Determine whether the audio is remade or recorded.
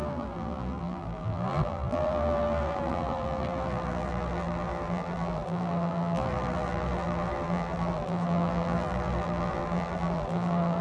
remade